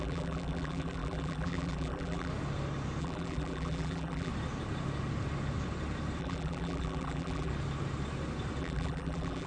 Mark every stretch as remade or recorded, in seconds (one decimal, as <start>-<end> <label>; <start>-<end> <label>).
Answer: 0.0-2.3 remade; 2.3-3.0 recorded; 3.0-4.3 remade; 4.3-6.2 recorded; 6.2-7.5 remade; 7.5-8.6 recorded; 8.6-9.5 remade